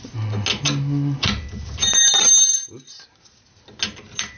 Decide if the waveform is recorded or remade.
recorded